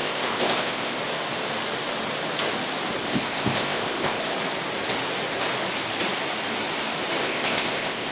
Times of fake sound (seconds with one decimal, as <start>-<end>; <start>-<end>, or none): 0.0-1.0; 3.0-4.3; 7.2-8.1